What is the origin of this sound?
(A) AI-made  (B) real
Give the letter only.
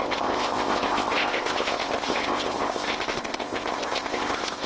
A